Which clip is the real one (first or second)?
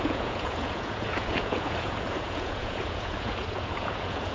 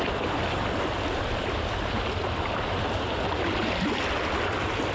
second